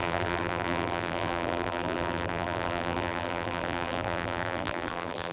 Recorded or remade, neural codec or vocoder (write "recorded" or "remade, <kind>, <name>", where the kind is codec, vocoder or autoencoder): remade, vocoder, BigVGAN v2